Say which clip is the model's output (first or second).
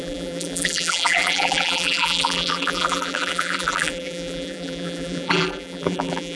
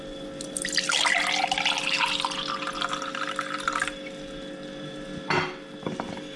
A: first